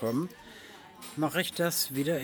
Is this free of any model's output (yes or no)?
no